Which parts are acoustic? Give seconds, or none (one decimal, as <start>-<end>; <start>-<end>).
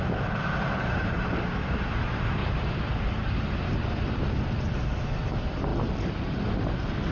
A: 0.0-2.4; 4.1-5.7; 6.2-7.1